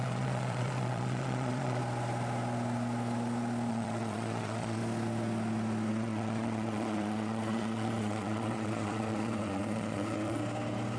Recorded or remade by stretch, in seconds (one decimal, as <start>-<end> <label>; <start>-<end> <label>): 0.0-1.8 remade; 1.8-3.7 recorded; 3.7-4.8 remade; 4.8-5.9 recorded; 5.9-10.4 remade; 10.4-11.0 recorded

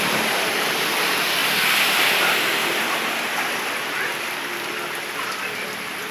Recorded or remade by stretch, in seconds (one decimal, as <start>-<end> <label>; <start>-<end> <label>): 0.0-6.1 remade